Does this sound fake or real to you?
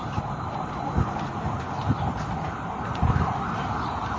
real